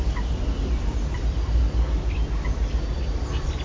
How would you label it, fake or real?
real